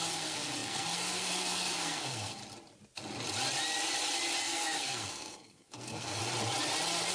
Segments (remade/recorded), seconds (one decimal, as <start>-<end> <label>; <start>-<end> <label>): 0.0-2.4 remade; 2.4-4.4 recorded; 4.4-6.2 remade; 6.2-7.1 recorded